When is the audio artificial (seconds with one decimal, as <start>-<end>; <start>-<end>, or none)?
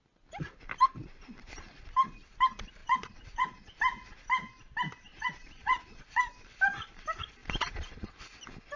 2.8-3.8; 5.1-6.2; 7.4-8.1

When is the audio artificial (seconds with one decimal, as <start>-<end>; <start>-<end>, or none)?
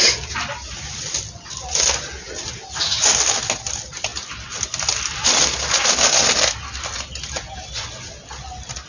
none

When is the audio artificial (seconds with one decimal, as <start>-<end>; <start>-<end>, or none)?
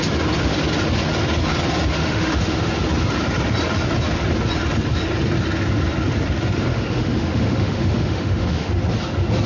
2.0-2.7; 6.7-8.7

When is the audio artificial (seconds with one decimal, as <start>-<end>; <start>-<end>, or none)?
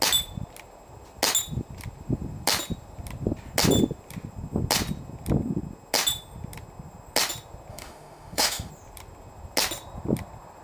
7.7-8.7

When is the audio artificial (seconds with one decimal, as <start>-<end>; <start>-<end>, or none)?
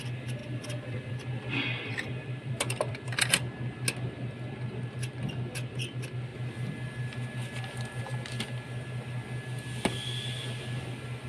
0.4-3.2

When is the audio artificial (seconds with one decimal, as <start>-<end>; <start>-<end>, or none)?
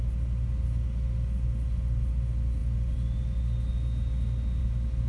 none